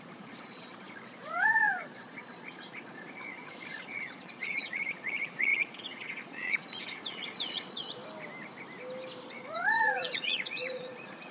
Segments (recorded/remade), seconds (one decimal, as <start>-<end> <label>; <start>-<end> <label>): 0.0-8.0 remade; 8.0-9.3 recorded; 9.3-11.3 remade